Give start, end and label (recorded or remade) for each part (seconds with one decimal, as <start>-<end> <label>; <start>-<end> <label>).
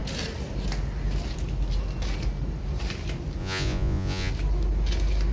0.0-3.4 recorded; 3.4-4.3 remade; 4.3-5.3 recorded